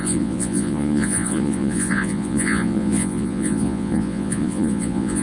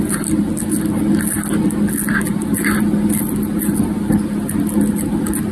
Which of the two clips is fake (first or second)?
first